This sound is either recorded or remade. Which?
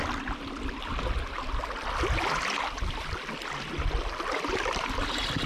recorded